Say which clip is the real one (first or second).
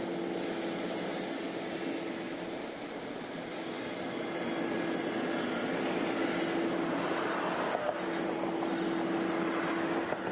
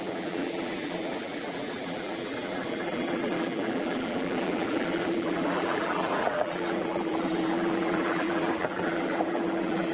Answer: first